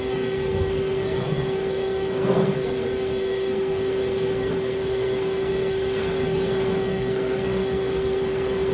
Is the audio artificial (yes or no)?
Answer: yes